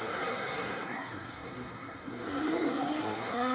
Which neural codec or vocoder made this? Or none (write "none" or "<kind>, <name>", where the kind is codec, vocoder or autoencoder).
codec, SNAC